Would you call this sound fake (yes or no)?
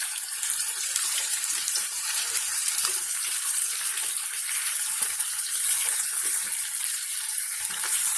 yes